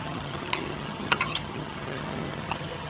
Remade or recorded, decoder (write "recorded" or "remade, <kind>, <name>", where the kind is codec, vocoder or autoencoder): remade, vocoder, HiFi-GAN